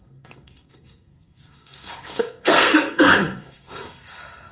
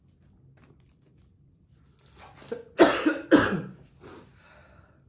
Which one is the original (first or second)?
second